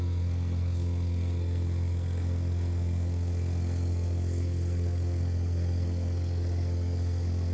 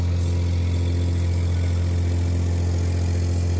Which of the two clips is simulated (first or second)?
first